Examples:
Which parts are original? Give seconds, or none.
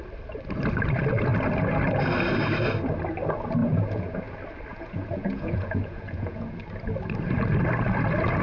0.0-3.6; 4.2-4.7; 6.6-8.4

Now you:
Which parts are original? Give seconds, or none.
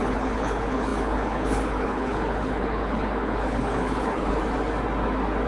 4.4-5.5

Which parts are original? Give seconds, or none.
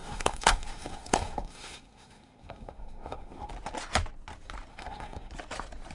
3.5-4.7; 5.3-5.9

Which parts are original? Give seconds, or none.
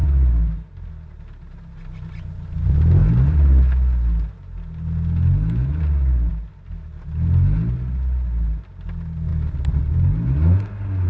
0.0-11.1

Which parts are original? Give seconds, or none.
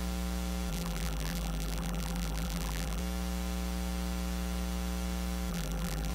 0.0-0.7; 3.0-5.5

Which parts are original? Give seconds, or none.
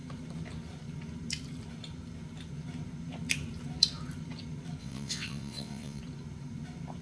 0.0-4.8; 6.0-7.0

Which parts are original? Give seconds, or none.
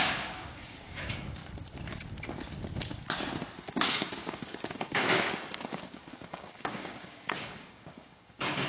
1.4-3.7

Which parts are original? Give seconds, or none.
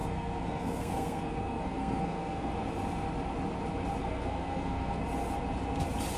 2.5-4.0; 5.0-6.2